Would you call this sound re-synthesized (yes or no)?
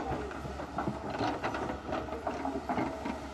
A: no